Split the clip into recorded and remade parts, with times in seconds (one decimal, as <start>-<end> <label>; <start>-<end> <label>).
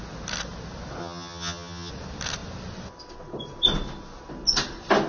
0.0-1.0 recorded; 1.0-1.9 remade; 1.9-5.1 recorded